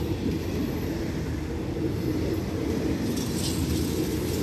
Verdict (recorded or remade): recorded